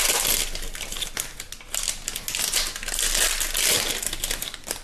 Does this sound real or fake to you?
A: real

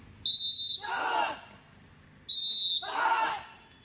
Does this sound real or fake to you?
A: real